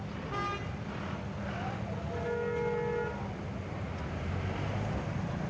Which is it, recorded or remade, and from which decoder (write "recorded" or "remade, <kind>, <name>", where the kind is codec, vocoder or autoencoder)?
recorded